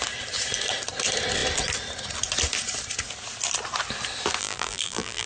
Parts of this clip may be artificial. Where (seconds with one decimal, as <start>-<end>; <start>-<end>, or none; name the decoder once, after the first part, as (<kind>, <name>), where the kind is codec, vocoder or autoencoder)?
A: 4.4-5.3 (vocoder, BigVGAN v2)